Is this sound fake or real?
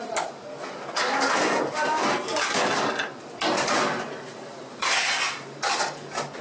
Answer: fake